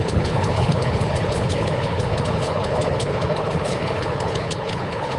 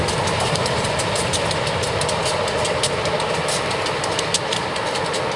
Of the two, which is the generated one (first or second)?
first